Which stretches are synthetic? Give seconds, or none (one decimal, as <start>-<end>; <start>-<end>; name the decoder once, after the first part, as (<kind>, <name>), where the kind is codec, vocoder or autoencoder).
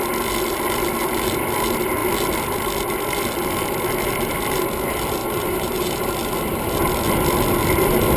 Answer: 5.2-6.0 (vocoder, BigVGAN v2)